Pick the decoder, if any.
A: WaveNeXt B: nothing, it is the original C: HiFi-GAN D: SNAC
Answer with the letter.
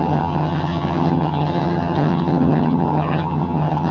C